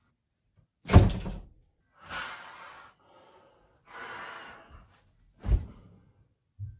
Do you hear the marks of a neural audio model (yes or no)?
no